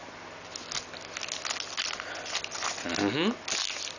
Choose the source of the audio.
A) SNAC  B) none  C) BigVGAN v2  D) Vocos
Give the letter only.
B